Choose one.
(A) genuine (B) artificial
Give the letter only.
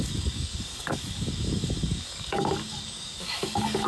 B